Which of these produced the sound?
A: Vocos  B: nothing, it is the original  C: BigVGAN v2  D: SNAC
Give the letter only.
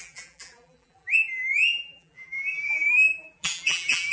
C